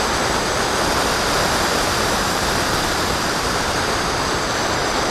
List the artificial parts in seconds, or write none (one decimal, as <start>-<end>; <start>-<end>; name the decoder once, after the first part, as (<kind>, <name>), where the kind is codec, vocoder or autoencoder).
1.9-3.7 (vocoder, BigVGAN v2)